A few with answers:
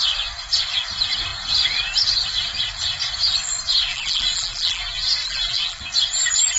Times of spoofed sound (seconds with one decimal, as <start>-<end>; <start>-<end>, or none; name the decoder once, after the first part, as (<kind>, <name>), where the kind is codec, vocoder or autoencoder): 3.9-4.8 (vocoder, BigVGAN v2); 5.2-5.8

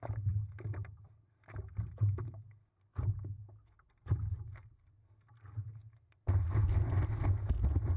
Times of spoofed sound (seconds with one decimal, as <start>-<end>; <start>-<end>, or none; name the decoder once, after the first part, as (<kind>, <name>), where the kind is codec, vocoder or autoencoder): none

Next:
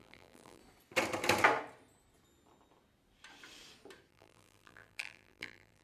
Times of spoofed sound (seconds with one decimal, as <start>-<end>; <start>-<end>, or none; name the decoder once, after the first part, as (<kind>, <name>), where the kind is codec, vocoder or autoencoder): 0.0-0.6 (vocoder, BigVGAN v2); 4.1-5.8